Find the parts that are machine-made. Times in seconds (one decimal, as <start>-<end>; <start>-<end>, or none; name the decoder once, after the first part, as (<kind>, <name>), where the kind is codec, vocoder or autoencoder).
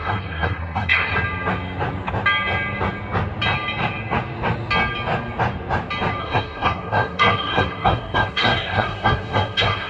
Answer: 0.0-1.1 (codec, SNAC); 6.2-9.9